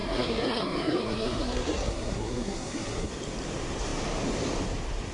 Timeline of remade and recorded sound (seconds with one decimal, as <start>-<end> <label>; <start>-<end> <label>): 0.0-3.1 remade; 3.1-5.1 recorded